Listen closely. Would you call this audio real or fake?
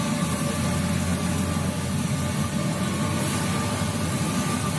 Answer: real